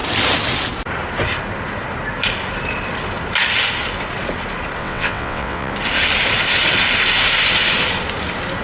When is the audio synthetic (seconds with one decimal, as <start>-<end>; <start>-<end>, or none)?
4.8-5.7